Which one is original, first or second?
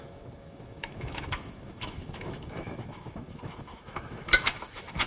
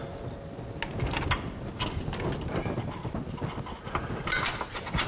second